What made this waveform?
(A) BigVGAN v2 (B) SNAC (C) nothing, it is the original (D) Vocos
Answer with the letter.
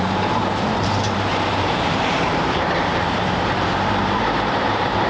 A